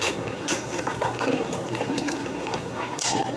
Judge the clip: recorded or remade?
remade